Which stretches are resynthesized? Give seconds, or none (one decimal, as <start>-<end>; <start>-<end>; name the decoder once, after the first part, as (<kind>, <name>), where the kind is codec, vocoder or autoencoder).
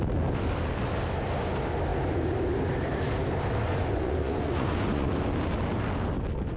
3.7-5.1 (vocoder, Vocos)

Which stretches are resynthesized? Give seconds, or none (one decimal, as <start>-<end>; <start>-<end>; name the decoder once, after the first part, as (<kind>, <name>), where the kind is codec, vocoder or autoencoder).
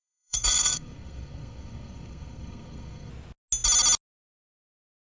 0.0-3.1 (codec, SNAC)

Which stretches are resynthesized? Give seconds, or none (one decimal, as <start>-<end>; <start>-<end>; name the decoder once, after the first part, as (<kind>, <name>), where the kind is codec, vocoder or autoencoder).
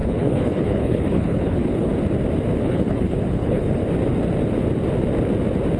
0.0-1.9 (codec, HILCodec); 2.6-3.8